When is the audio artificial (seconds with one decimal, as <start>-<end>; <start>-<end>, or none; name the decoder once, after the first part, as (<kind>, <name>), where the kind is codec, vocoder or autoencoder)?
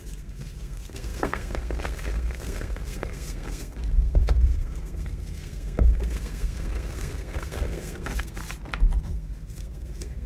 0.0-8.4 (codec, SNAC); 9.0-10.3